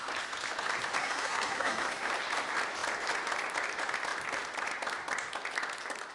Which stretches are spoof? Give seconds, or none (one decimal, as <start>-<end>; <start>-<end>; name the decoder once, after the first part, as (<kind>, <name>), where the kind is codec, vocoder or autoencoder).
1.0-2.1 (codec, SNAC)